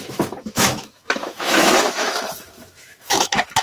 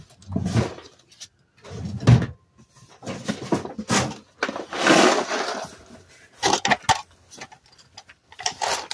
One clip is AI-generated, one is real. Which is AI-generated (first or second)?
first